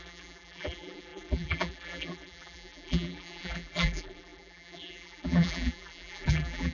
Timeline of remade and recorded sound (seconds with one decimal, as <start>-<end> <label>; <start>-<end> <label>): 0.0-6.7 remade